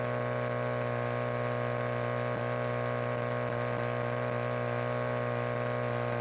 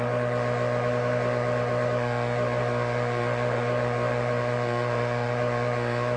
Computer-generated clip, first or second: second